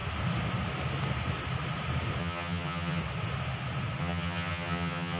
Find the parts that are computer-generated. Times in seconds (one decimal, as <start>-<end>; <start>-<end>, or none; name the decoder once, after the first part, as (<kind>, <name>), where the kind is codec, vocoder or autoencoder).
2.2-3.0 (vocoder, HiFi-GAN); 4.0-5.2